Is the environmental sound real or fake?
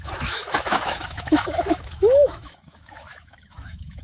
fake